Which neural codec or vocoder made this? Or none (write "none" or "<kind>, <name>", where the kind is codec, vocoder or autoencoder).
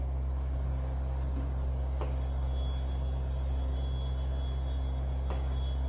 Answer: none